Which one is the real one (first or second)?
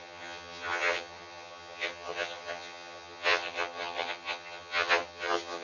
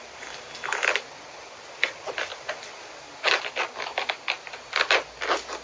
second